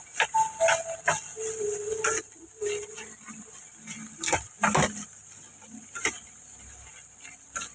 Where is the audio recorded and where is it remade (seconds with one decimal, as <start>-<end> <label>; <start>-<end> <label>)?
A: 0.0-7.7 recorded